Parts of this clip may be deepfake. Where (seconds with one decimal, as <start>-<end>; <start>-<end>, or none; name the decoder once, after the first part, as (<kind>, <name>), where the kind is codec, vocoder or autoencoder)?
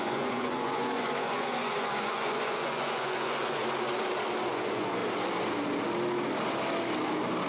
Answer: 0.0-3.6 (vocoder, Vocos); 4.5-5.0